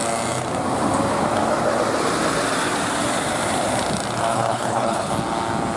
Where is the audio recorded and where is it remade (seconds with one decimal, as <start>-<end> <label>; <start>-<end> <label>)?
0.0-4.3 recorded; 4.3-5.1 remade; 5.1-5.8 recorded